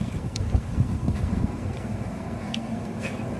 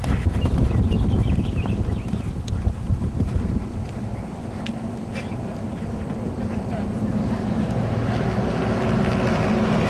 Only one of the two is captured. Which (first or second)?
second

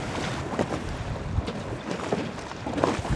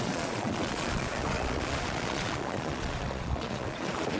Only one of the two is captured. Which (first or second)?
first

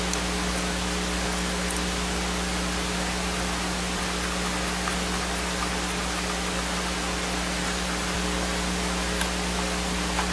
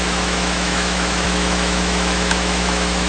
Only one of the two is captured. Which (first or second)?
first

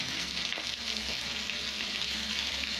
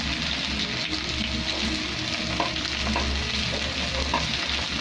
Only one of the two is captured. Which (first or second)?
second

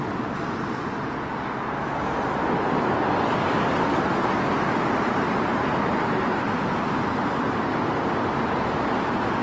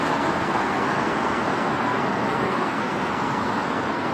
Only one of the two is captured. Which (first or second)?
first